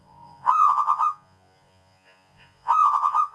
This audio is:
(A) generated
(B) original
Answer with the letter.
A